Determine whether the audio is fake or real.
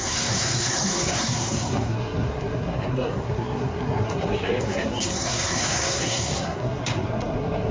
fake